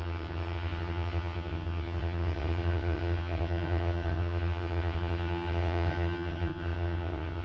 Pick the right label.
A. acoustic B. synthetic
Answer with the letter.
B